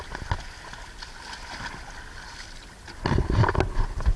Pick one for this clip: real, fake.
real